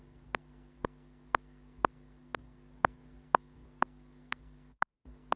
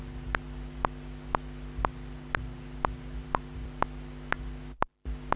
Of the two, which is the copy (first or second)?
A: first